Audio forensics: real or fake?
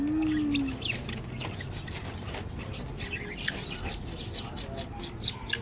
real